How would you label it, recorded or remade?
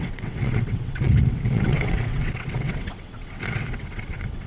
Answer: remade